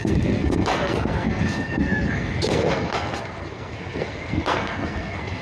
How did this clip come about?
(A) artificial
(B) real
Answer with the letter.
A